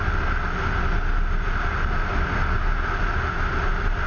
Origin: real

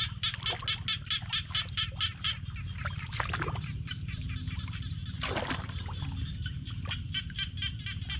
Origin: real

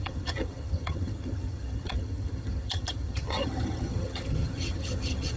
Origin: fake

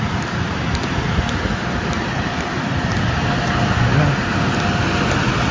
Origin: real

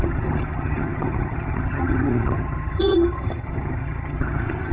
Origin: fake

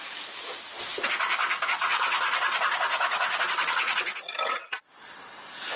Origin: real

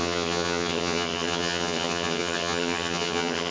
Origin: fake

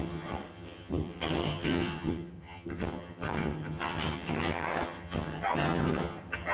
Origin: fake